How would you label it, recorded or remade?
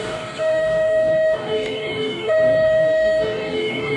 remade